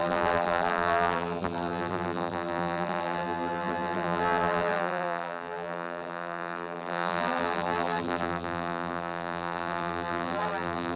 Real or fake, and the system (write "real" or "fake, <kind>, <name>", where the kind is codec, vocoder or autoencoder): fake, vocoder, BigVGAN v2